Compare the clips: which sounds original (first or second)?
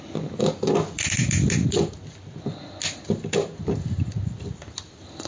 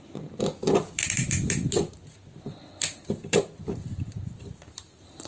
first